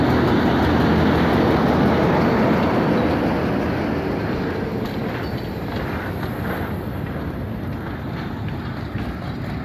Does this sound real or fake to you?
real